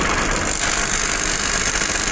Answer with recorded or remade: remade